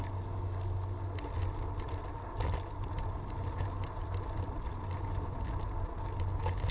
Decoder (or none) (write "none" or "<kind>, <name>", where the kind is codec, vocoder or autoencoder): none